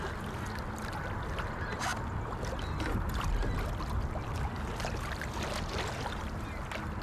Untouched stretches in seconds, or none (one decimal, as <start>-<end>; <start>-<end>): 0.0-7.0